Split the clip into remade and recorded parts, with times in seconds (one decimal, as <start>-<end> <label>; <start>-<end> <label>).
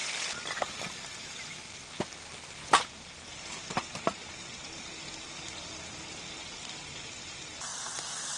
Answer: 0.0-0.7 remade; 0.7-2.6 recorded; 2.6-6.1 remade; 6.1-7.7 recorded; 7.7-8.4 remade